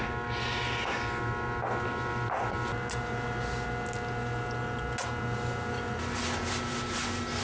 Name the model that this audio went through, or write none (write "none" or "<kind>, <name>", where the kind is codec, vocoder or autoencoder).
none